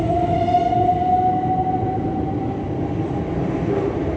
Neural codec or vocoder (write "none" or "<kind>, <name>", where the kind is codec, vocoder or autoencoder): none